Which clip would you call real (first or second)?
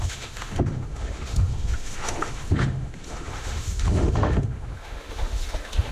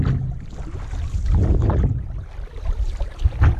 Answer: second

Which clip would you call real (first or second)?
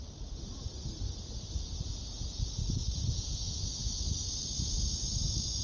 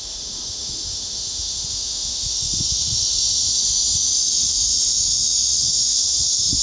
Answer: first